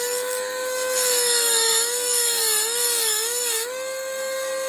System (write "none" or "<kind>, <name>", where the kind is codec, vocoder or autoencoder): codec, DAC